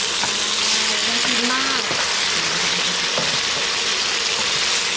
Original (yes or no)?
yes